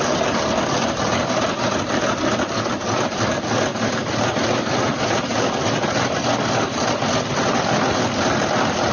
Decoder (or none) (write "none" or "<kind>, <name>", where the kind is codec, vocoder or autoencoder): none